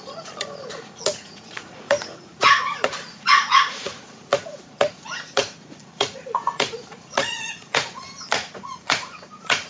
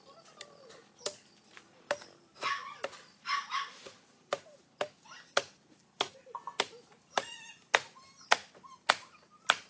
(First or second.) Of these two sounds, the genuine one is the second